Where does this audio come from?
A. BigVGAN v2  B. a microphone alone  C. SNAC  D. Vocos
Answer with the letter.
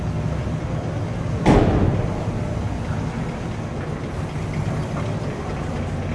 B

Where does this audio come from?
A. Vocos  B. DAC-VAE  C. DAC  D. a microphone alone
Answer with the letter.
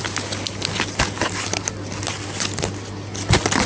D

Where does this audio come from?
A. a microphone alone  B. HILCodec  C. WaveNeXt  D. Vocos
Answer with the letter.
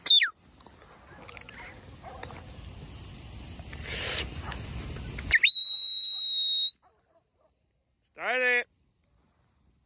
A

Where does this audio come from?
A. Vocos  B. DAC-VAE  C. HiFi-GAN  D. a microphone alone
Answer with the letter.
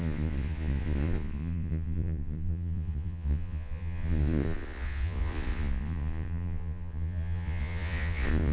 A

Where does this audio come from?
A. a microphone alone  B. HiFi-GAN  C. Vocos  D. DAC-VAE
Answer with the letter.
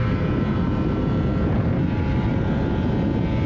A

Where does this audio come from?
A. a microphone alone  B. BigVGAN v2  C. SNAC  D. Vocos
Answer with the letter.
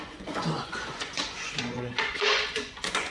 D